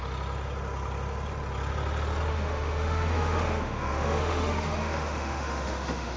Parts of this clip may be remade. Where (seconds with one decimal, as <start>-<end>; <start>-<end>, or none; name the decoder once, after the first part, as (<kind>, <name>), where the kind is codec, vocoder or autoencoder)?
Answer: 2.3-6.2 (autoencoder, DAC-VAE)